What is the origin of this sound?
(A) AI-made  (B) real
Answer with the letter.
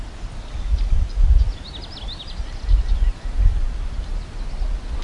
B